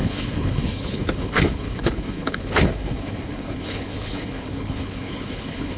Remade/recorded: remade